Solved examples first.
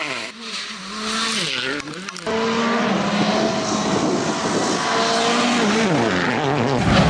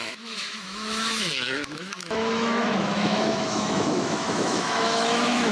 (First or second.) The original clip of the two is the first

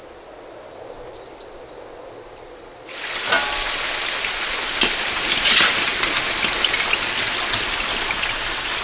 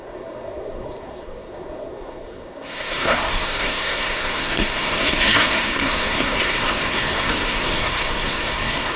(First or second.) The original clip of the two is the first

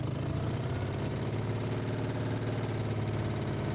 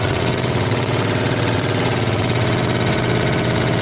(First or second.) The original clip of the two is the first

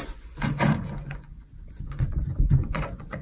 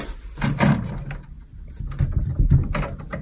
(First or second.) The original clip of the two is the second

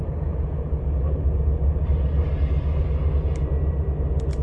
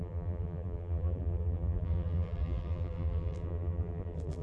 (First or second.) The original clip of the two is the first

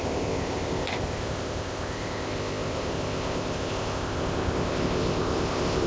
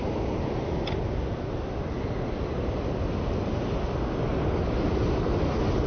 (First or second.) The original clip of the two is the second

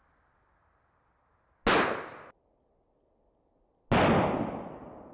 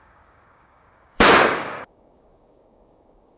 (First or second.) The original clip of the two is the first